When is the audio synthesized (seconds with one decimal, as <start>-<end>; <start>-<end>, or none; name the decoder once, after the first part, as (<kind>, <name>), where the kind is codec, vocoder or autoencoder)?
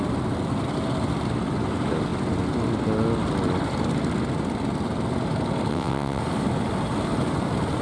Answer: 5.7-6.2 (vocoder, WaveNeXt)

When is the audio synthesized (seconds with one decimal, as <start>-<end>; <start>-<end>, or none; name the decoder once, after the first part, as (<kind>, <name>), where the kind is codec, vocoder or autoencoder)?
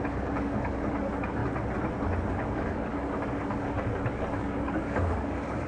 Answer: 0.0-1.4 (codec, DAC); 2.3-5.7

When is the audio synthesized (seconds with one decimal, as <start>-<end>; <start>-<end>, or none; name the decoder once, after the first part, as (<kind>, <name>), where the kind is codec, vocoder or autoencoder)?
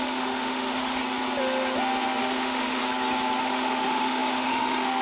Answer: 0.0-1.0 (autoencoder, DAC-VAE); 2.2-2.8; 3.4-5.0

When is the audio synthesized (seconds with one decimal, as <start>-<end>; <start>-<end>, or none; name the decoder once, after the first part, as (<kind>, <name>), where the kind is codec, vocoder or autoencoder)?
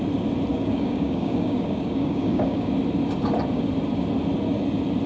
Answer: 0.5-2.7 (codec, DAC)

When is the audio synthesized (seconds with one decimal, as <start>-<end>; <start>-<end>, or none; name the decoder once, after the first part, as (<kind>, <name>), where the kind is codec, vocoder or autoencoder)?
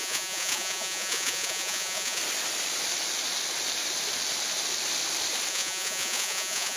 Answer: 0.0-2.2 (vocoder, Vocos); 5.5-6.8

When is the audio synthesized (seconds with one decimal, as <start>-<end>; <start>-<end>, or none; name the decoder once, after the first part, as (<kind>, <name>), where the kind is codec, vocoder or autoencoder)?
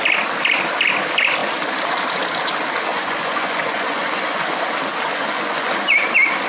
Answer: 2.9-4.6 (vocoder, Vocos); 5.1-5.7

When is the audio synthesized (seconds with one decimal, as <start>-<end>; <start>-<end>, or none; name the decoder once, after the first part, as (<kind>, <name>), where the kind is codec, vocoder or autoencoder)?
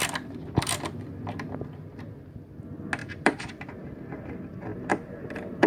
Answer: 3.0-3.7 (vocoder, BigVGAN v2); 4.7-5.7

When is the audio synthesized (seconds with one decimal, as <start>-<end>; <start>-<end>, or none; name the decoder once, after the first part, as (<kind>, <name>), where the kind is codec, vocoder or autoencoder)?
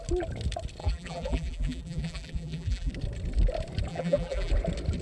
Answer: 0.8-2.9 (vocoder, BigVGAN v2); 3.9-4.5